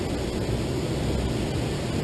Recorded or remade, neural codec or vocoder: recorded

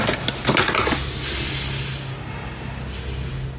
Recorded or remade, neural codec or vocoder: recorded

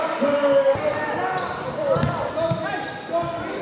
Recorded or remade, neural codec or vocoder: recorded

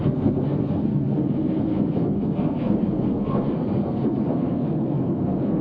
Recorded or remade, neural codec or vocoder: remade, codec, SNAC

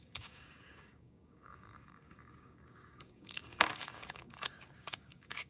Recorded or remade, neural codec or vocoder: remade, codec, DAC